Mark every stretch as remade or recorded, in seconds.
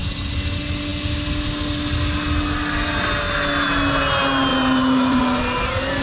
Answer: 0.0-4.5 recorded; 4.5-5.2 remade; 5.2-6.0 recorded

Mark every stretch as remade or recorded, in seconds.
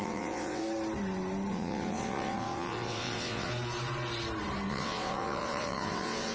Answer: 0.0-0.6 remade; 0.6-1.5 recorded; 1.5-3.5 remade; 3.5-4.7 recorded; 4.7-6.3 remade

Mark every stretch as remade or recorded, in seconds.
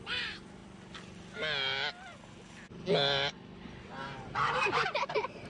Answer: 0.0-0.6 remade; 0.6-3.9 recorded; 3.9-5.5 remade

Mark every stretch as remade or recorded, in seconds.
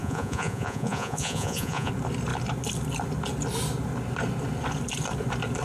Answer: 0.0-1.9 remade; 1.9-5.6 recorded